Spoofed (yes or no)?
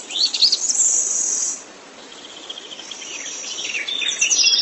no